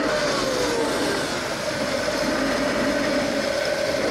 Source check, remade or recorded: recorded